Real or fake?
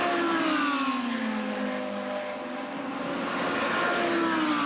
real